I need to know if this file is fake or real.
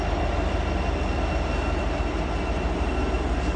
real